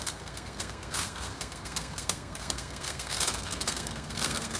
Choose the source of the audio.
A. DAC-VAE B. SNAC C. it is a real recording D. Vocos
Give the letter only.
B